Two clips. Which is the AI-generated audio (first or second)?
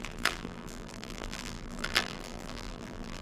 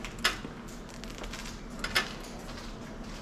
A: first